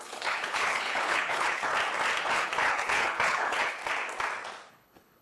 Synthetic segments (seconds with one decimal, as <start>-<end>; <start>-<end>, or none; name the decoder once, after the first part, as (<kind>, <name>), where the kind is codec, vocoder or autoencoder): 0.0-1.7 (codec, HILCodec); 2.3-3.8; 4.7-5.2